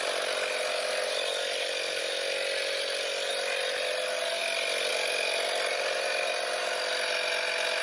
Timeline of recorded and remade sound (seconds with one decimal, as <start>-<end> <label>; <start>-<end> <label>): 0.0-7.8 recorded